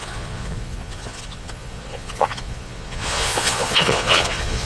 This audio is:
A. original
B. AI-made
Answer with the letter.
B